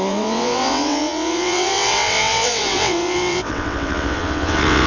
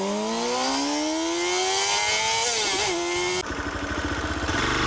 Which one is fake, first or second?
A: first